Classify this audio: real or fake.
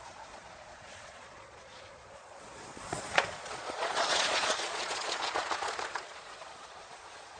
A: fake